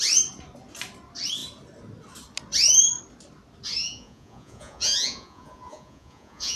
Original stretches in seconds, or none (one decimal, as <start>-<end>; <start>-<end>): 0.0-3.8